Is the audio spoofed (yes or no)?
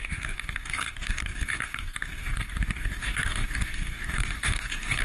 yes